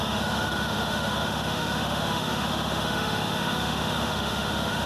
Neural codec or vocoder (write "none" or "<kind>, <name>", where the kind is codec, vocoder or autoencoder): autoencoder, DAC-VAE